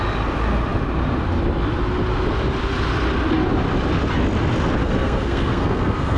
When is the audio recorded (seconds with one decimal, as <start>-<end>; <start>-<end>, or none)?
0.0-4.8